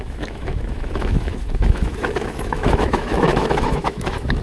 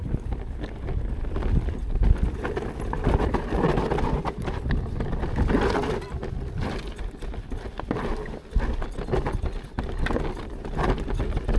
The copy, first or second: first